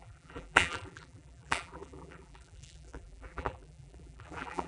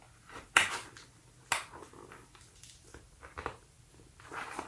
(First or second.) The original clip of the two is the second